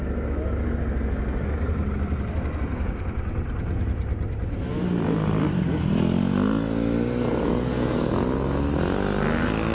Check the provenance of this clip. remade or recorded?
recorded